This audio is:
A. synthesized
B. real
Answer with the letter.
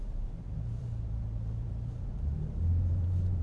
A